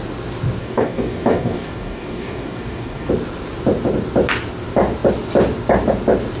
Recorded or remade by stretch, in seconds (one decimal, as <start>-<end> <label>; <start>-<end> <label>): 0.0-0.6 recorded; 0.6-3.1 remade; 3.1-6.4 recorded